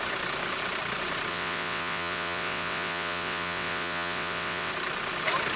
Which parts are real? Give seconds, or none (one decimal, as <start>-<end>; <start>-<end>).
0.0-1.3; 4.7-5.6

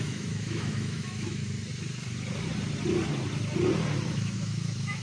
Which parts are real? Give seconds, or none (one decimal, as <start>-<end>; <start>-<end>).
1.4-4.1

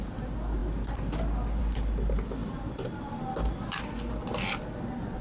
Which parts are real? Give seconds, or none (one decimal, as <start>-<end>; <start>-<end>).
0.0-5.2

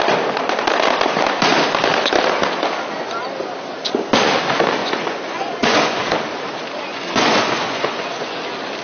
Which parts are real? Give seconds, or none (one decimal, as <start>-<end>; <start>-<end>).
0.0-4.8; 6.1-6.9; 8.4-8.8

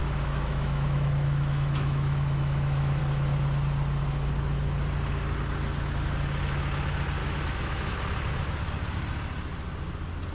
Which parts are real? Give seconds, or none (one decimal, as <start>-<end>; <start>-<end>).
3.0-7.2; 8.0-10.3

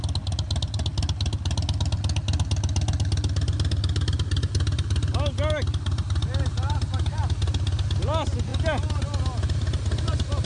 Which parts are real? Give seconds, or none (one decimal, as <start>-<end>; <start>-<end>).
0.0-10.4

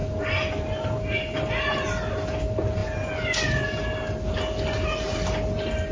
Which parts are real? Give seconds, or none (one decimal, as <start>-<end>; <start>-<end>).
0.0-5.9

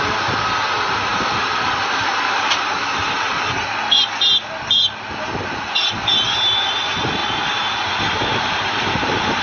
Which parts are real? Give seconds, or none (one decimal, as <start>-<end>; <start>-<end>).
0.0-1.1; 2.1-7.2